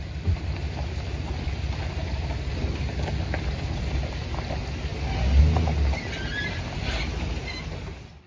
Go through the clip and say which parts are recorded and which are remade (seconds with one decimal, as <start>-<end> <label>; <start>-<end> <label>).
0.0-8.3 recorded